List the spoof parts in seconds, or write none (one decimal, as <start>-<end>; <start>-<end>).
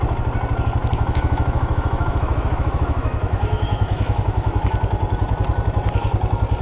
0.8-4.6